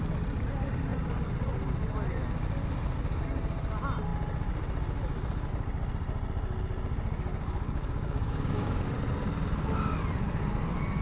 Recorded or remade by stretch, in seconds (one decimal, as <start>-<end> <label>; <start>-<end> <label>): 0.0-7.3 recorded; 7.3-8.9 remade; 8.9-11.0 recorded